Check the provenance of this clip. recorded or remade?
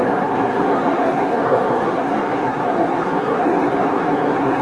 remade